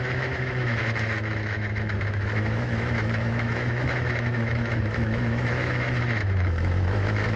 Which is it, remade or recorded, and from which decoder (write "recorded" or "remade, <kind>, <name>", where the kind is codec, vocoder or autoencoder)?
remade, autoencoder, DAC-VAE